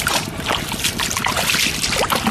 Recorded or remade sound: recorded